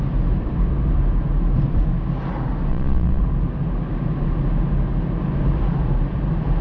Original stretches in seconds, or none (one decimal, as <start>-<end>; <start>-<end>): 0.0-2.7; 3.2-6.6